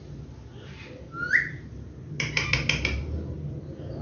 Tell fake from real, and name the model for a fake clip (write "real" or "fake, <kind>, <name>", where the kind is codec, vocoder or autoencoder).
real